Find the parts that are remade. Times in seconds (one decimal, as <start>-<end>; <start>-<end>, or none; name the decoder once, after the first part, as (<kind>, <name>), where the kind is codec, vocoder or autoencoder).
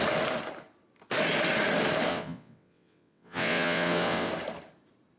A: 2.1-4.3 (vocoder, WaveNeXt)